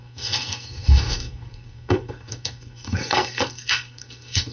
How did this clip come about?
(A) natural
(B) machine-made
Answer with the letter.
B